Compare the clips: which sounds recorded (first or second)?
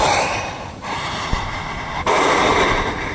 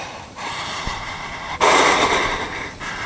first